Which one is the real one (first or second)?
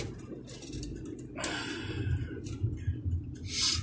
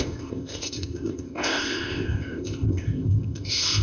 first